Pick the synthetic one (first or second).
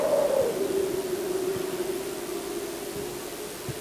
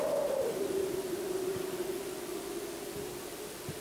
second